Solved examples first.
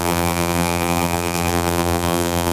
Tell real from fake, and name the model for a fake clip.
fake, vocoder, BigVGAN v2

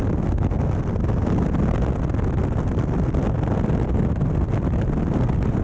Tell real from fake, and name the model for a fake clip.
real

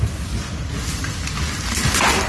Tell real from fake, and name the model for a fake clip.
real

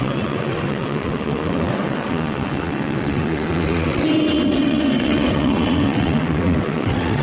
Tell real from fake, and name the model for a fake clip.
fake, vocoder, WaveNeXt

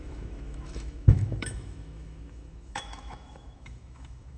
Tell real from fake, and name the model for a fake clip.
fake, autoencoder, DAC-VAE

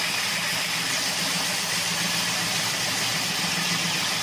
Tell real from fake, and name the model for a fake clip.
real